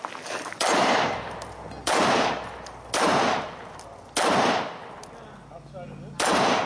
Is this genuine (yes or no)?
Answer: yes